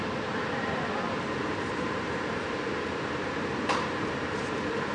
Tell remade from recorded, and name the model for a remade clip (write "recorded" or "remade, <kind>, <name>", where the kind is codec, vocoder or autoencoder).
remade, vocoder, BigVGAN v2